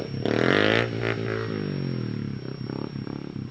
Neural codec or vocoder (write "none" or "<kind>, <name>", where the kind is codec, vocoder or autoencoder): none